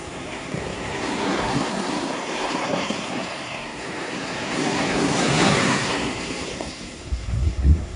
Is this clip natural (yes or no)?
no